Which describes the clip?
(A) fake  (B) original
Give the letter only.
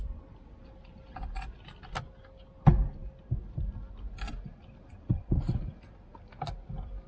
B